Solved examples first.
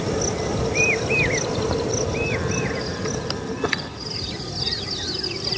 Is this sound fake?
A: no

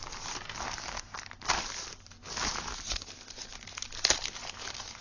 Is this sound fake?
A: no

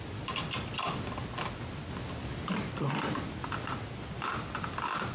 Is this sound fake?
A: no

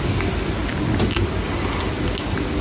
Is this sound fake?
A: no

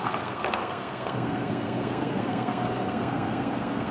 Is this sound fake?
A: yes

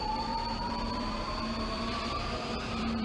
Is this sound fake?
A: yes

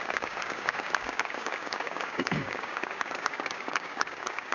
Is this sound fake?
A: yes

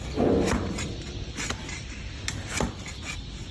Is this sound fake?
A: no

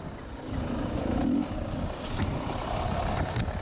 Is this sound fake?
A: no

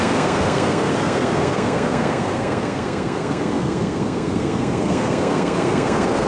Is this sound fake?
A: yes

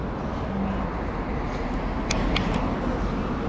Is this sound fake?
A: no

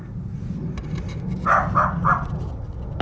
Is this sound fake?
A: no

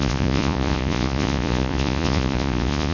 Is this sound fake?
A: yes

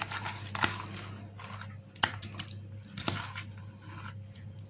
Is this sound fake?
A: no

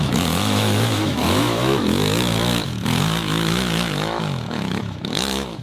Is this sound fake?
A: yes